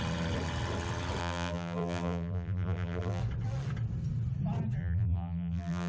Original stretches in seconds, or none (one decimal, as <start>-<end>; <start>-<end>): 0.0-1.2; 3.2-4.8